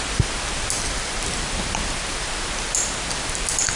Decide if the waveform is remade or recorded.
recorded